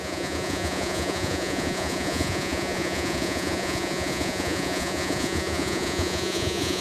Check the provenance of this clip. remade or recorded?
remade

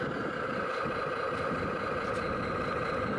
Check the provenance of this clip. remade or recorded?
recorded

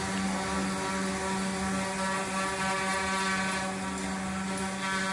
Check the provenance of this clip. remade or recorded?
recorded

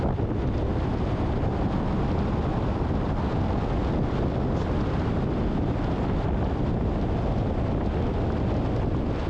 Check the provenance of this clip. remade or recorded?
recorded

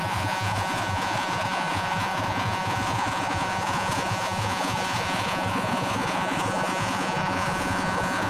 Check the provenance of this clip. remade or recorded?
remade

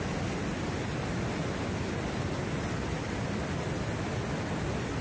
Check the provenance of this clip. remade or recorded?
recorded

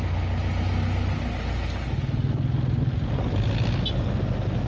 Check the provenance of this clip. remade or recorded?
recorded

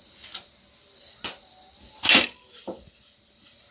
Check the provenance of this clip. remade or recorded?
recorded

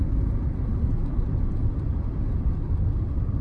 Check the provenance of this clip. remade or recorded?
recorded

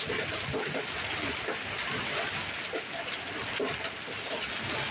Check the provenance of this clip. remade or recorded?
recorded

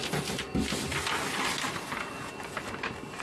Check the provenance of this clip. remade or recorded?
recorded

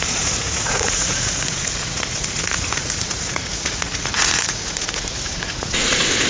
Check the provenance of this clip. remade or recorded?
remade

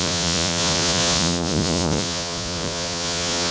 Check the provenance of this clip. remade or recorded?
remade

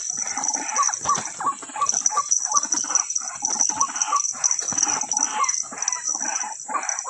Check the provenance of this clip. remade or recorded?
recorded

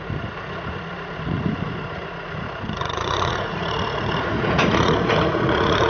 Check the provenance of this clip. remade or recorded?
remade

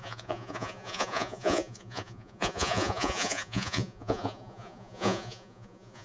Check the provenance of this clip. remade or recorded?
remade